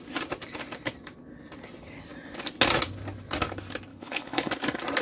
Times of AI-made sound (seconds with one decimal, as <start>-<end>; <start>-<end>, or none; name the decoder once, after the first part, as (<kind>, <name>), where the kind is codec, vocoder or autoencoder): 3.9-4.5 (codec, HILCodec)